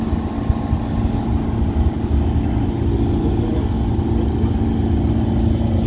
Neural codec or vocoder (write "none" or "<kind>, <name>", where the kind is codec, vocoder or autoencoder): none